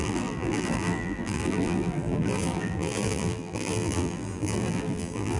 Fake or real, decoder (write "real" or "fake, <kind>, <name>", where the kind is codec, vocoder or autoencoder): fake, vocoder, BigVGAN v2